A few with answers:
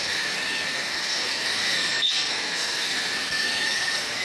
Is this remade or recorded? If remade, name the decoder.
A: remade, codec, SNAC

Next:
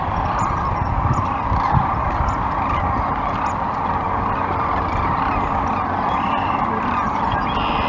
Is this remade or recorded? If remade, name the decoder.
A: recorded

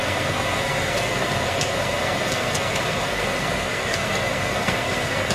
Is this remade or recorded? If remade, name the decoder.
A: remade, codec, SNAC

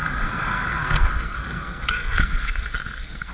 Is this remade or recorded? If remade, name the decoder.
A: remade, codec, SNAC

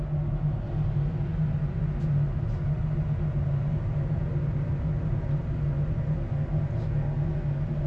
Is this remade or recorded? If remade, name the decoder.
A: recorded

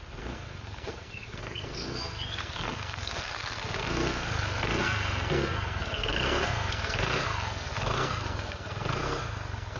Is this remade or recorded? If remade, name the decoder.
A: remade, codec, SNAC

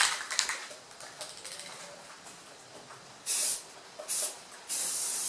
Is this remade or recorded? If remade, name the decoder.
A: recorded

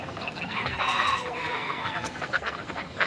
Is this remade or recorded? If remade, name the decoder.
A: remade, codec, SNAC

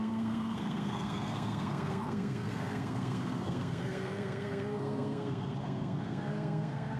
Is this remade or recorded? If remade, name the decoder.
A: remade, codec, SNAC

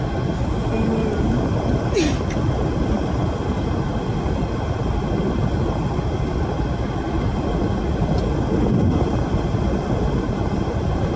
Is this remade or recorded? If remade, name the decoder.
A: recorded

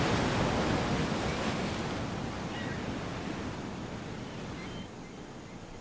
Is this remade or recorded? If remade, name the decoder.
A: recorded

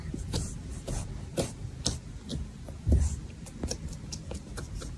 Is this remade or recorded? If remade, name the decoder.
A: recorded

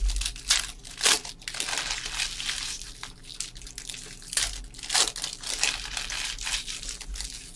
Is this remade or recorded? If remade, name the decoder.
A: recorded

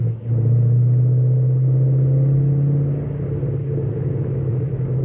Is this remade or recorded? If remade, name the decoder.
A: recorded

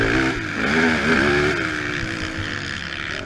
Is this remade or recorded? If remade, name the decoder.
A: recorded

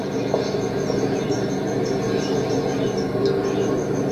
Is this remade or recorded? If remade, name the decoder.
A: recorded